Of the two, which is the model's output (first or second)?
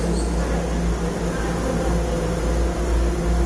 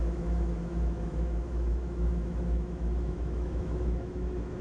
second